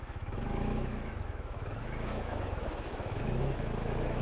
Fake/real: fake